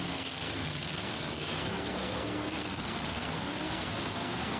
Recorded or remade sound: remade